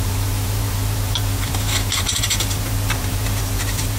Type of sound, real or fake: fake